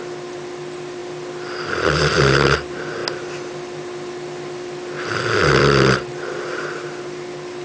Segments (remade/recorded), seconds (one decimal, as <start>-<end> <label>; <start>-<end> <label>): 0.0-7.6 recorded